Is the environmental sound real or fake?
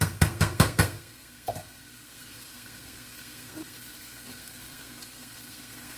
fake